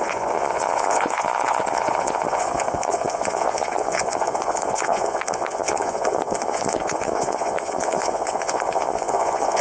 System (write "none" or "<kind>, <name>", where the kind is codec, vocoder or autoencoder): vocoder, Vocos